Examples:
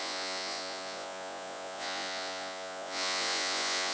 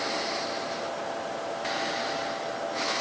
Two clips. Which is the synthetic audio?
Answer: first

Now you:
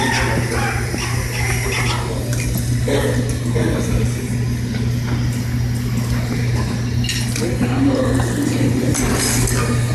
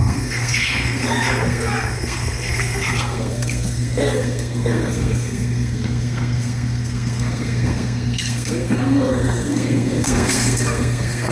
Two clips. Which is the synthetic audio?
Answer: second